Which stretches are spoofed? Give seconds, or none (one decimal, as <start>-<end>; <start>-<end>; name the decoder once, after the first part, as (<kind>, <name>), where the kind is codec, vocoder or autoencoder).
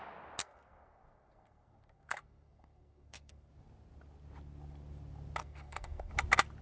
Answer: 0.4-3.5 (codec, SNAC); 5.4-6.1